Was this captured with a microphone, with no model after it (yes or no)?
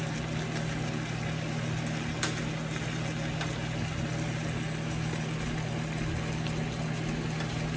yes